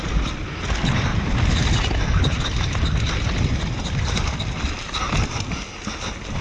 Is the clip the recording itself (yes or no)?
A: yes